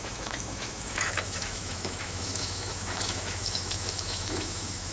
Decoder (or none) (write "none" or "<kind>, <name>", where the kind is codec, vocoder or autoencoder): autoencoder, DAC-VAE